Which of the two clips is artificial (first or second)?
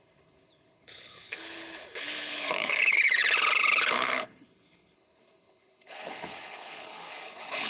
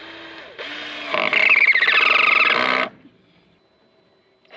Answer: first